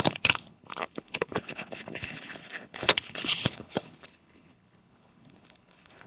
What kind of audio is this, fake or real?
fake